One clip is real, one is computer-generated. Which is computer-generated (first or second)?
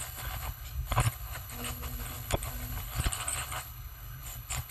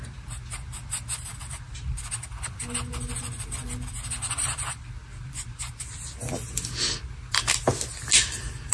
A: first